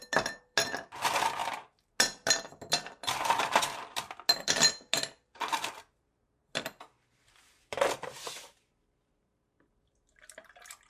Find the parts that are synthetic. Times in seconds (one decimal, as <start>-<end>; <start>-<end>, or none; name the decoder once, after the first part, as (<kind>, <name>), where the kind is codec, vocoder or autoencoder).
none